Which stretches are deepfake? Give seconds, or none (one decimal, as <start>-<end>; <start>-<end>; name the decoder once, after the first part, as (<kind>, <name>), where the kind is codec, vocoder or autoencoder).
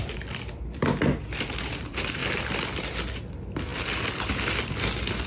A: none